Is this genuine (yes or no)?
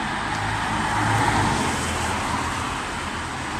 yes